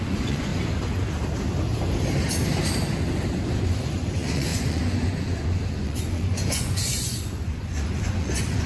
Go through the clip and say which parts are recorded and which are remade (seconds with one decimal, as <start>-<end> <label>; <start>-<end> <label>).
0.0-0.5 remade; 0.5-3.6 recorded; 3.6-8.7 remade